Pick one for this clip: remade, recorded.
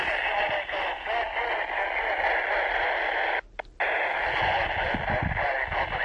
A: recorded